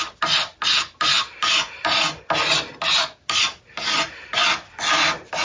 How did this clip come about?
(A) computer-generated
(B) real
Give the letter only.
B